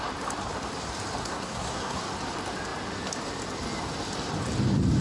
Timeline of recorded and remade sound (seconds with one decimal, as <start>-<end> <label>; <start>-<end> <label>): 0.0-1.2 recorded; 1.2-2.0 remade; 2.0-5.0 recorded